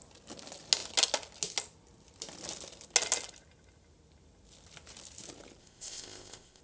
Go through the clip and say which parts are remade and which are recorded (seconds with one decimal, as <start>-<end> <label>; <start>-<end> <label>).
0.0-5.6 recorded; 5.6-6.6 remade